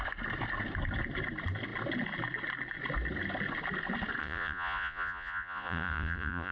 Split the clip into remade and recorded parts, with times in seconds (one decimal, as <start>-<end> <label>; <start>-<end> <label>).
0.0-4.2 recorded; 4.2-6.5 remade